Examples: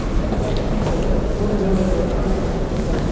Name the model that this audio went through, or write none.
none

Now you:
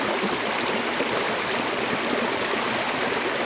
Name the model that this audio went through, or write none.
none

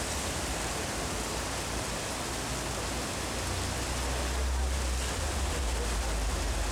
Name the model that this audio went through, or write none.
none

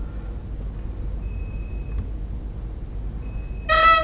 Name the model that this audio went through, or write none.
none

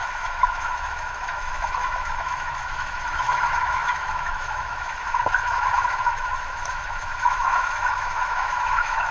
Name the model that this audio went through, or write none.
autoencoder, DAC-VAE